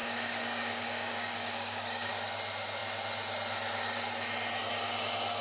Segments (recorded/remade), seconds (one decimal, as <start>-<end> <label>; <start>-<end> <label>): 0.0-2.1 remade; 2.1-5.4 recorded